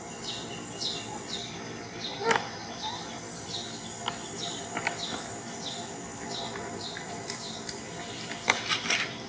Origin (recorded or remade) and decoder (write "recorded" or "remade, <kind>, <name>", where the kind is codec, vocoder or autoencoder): recorded